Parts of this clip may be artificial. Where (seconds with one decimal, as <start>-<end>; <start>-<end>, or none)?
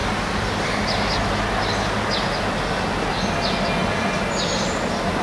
none